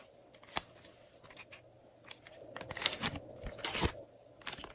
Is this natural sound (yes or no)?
yes